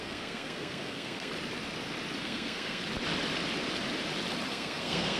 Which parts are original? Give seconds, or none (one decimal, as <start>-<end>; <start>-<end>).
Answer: 1.3-2.2; 2.8-4.5